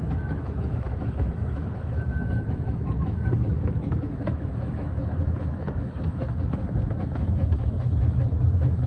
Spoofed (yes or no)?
yes